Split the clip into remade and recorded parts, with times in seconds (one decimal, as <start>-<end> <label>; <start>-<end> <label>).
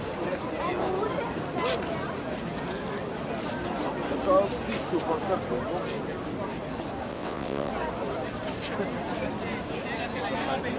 0.0-7.1 recorded; 7.1-7.7 remade; 7.7-10.8 recorded